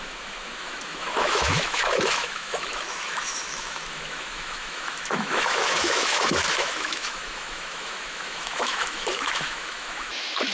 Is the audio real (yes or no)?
no